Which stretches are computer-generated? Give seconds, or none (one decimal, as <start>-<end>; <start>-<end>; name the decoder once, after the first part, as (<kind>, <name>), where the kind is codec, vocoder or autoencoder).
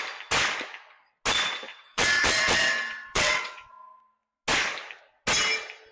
1.7-3.7 (vocoder, WaveNeXt)